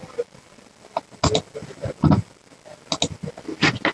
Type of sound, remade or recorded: recorded